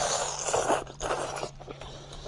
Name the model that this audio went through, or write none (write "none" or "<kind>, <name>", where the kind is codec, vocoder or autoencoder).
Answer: none